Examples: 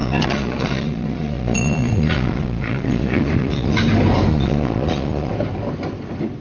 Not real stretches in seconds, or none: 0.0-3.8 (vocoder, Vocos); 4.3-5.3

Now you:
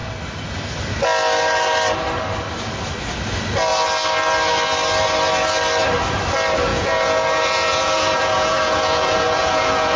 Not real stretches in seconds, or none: 6.7-10.0 (vocoder, Vocos)

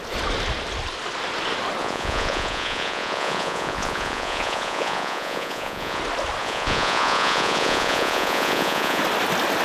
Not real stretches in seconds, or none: 1.8-6.0 (vocoder, Vocos); 6.4-9.0

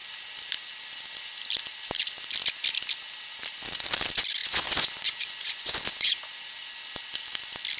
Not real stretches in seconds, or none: 4.4-6.2 (vocoder, Vocos)

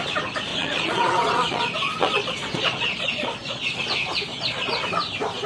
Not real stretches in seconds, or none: 0.5-3.8 (vocoder, Vocos); 4.3-4.8

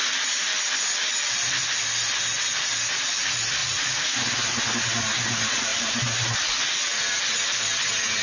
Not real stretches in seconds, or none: 3.6-4.2 (vocoder, Vocos)

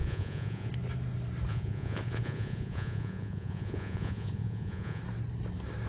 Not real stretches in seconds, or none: 0.0-0.7 (vocoder, Vocos); 1.5-5.0

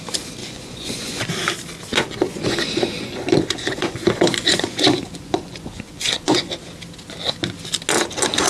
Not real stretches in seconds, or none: 0.4-1.3 (vocoder, Vocos); 1.9-6.5